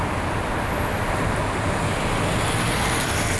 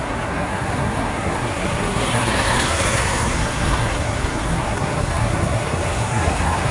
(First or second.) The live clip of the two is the first